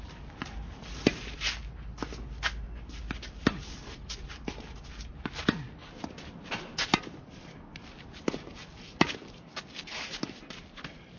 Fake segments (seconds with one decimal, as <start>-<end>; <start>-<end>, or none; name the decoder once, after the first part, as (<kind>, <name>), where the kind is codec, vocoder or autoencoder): none